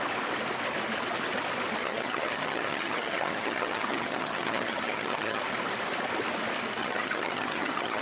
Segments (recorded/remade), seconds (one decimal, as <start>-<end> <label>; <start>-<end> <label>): 0.0-1.8 recorded; 1.8-5.4 remade; 5.4-6.8 recorded; 6.8-8.0 remade